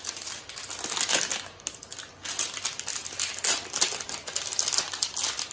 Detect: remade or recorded recorded